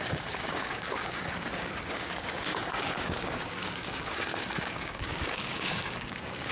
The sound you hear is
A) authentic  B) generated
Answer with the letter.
B